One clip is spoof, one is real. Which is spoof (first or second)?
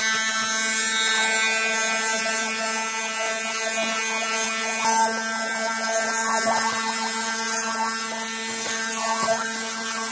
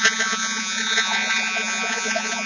second